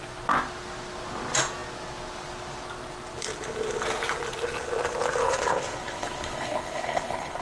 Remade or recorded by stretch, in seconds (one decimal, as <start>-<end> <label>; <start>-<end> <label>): 0.0-5.2 recorded; 5.2-7.4 remade

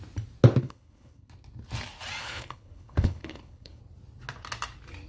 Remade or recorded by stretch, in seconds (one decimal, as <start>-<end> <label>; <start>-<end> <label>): 0.0-0.6 recorded; 0.6-1.3 remade; 1.3-2.2 recorded; 2.2-3.8 remade; 3.8-5.1 recorded

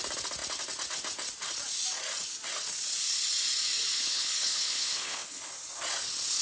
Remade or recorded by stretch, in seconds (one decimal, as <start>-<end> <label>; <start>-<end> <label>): 0.0-4.0 recorded; 4.0-5.4 remade; 5.4-6.4 recorded

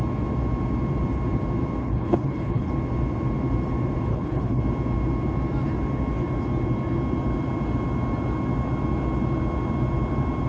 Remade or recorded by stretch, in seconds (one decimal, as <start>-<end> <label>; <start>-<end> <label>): 0.0-1.8 recorded; 1.8-2.7 remade; 2.7-4.1 recorded; 4.1-4.6 remade; 4.6-10.5 recorded

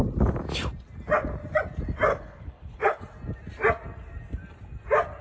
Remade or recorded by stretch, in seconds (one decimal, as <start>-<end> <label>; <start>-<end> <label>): 0.0-2.1 recorded; 2.1-3.0 remade; 3.0-5.2 recorded